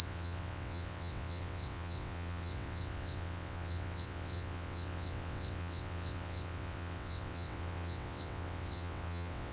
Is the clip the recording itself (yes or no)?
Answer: no